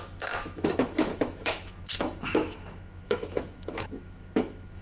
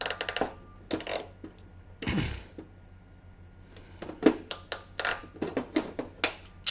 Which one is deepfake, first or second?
first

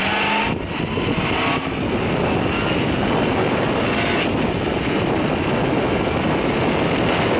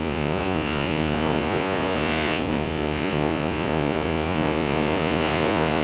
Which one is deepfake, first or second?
second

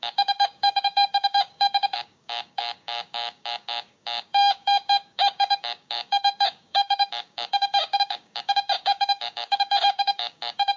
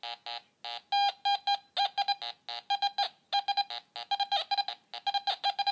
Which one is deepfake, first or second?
first